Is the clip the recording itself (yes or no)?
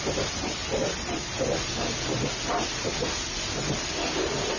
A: yes